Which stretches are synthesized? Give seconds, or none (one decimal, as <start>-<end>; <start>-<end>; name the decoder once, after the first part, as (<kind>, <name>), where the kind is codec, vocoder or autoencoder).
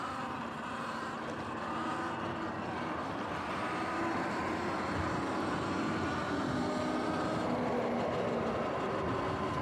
none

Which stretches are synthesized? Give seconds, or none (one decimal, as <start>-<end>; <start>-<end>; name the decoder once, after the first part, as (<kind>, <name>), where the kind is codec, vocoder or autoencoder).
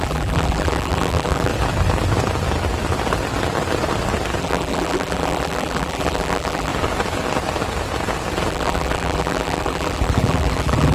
0.0-1.5 (vocoder, BigVGAN v2); 4.4-6.7; 8.5-10.9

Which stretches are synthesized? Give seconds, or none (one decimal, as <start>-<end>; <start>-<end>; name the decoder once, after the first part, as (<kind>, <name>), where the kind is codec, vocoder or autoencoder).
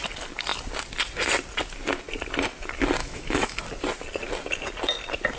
3.0-3.6 (autoencoder, DAC-VAE)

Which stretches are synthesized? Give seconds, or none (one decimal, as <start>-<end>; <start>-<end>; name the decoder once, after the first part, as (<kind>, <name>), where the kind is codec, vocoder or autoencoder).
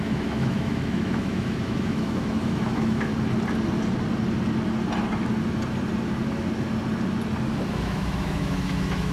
0.0-3.1 (autoencoder, DAC-VAE); 7.8-9.1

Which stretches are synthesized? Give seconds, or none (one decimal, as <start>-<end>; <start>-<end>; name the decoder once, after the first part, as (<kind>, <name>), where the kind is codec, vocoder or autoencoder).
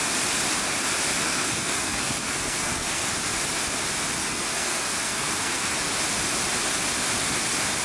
1.2-3.1 (codec, SNAC); 4.2-5.7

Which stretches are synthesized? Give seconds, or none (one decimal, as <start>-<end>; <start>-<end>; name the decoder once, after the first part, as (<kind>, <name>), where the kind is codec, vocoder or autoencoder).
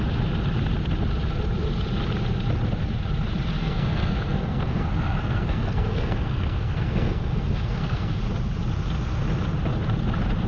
3.6-8.2 (codec, SNAC)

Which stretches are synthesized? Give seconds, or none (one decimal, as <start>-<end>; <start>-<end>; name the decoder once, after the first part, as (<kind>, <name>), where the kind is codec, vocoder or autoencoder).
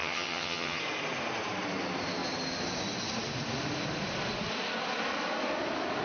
0.0-0.8 (vocoder, HiFi-GAN)